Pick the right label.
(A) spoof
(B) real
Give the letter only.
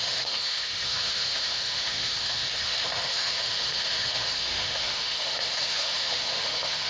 A